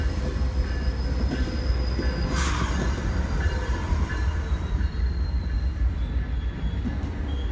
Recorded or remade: recorded